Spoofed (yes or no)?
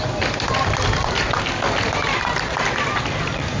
no